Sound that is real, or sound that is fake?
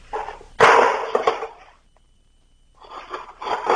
real